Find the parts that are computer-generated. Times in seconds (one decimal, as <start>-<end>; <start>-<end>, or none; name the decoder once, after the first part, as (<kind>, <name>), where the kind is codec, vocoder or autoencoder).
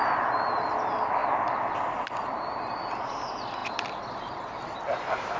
none